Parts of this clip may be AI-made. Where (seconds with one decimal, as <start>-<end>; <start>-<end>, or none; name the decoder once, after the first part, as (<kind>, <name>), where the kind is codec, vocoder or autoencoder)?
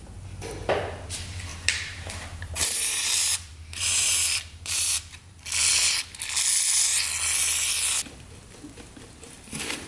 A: 1.5-5.0 (vocoder, BigVGAN v2)